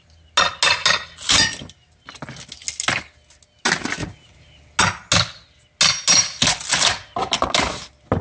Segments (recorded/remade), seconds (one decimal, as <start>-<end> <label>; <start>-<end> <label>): 0.0-8.2 recorded